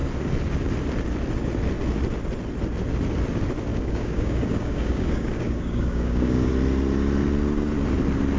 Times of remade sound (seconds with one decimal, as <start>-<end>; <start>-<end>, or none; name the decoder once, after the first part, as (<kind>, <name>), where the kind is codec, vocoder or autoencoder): 3.7-6.5 (codec, DAC)